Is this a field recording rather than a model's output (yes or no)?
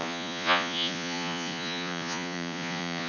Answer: no